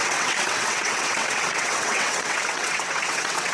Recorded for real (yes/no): no